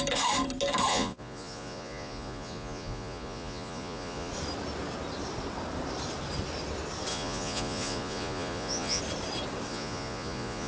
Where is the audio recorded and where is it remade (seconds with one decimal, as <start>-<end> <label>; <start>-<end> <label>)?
0.0-0.9 recorded; 0.9-4.3 remade; 4.3-7.1 recorded; 7.1-9.0 remade; 9.0-9.7 recorded; 9.7-10.7 remade